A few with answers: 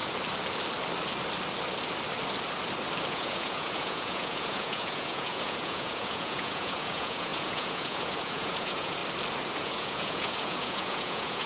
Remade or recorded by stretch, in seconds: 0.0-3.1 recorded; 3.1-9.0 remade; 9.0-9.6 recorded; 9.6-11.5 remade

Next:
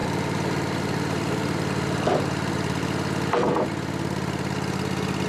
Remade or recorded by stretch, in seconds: 0.0-2.8 remade; 2.8-5.3 recorded

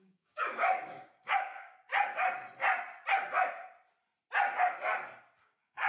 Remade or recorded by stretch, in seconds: 0.0-1.9 remade; 1.9-5.4 recorded; 5.4-5.9 remade